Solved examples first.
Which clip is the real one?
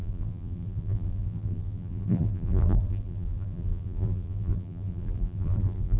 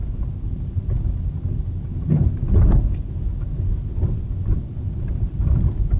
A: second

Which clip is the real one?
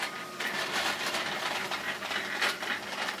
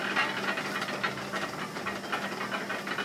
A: second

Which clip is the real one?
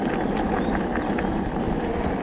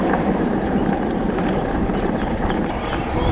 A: first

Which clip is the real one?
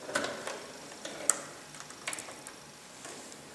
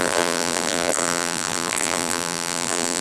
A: first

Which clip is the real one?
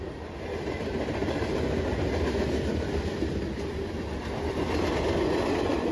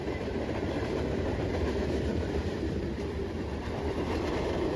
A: first